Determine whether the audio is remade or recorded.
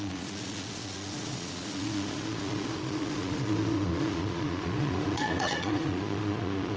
remade